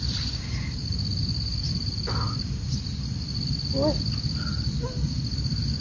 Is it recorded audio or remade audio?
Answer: recorded